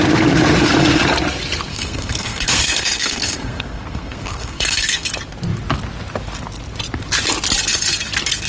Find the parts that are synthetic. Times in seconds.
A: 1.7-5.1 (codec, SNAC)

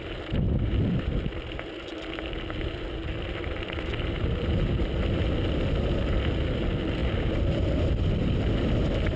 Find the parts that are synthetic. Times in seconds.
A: none

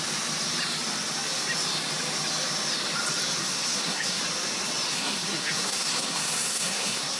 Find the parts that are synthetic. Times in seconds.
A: 3.4-4.2 (codec, SNAC); 4.9-7.2